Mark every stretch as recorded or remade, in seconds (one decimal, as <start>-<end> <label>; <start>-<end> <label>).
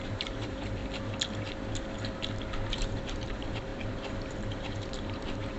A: 0.0-0.8 remade; 0.8-2.7 recorded; 2.7-5.6 remade